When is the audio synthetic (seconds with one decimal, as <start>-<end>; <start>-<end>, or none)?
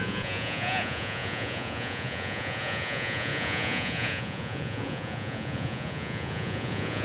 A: 0.0-7.0